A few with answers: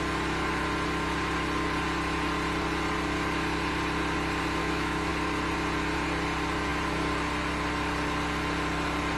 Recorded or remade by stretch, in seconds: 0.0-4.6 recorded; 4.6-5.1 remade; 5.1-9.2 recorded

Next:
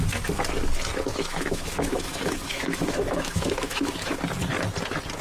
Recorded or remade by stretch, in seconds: 0.0-1.1 recorded; 1.1-4.2 remade; 4.2-5.2 recorded

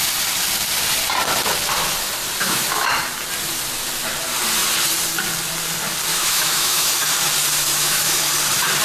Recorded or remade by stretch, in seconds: 0.0-2.4 recorded; 2.4-2.9 remade; 2.9-6.1 recorded; 6.1-6.9 remade; 6.9-7.7 recorded; 7.7-8.2 remade; 8.2-8.8 recorded